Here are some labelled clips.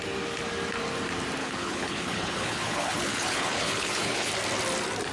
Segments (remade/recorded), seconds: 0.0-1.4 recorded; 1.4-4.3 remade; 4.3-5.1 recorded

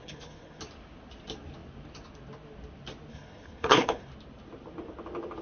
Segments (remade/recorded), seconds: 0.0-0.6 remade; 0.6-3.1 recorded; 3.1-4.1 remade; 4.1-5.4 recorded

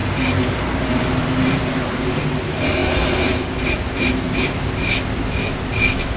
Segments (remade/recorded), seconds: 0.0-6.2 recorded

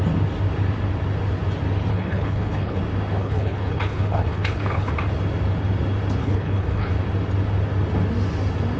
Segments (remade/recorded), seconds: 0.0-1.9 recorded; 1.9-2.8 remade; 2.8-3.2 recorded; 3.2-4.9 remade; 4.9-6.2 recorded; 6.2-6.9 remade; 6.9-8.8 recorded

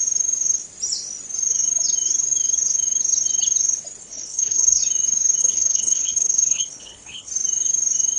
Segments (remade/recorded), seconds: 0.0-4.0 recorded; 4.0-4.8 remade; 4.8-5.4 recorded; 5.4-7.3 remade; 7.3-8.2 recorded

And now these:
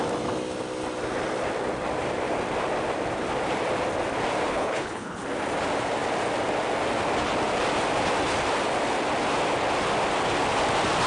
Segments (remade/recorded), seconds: 0.0-4.5 recorded; 4.5-5.2 remade; 5.2-11.1 recorded